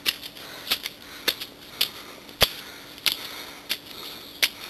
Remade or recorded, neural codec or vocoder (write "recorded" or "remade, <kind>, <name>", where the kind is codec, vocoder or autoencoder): recorded